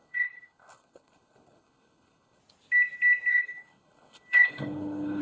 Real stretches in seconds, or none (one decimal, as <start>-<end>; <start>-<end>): 2.4-3.3